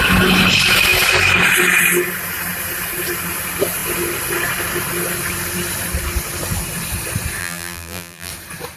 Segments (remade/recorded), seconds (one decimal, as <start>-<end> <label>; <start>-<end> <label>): 0.0-7.4 recorded; 7.4-8.3 remade; 8.3-8.8 recorded